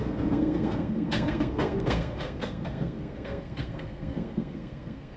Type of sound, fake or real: fake